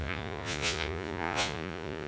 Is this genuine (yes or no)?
no